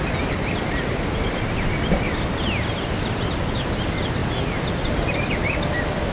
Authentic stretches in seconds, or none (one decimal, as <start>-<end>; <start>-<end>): 0.0-6.1